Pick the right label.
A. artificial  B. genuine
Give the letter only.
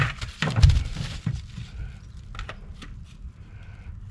B